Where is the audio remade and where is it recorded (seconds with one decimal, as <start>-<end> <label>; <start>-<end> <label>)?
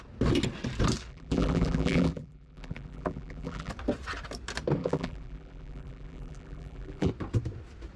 0.0-1.1 recorded; 1.1-3.7 remade; 3.7-4.8 recorded; 4.8-7.1 remade; 7.1-8.0 recorded